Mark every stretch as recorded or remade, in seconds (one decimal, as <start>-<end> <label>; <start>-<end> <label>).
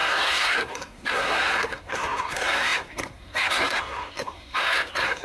0.0-5.2 remade